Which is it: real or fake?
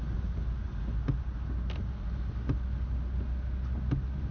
real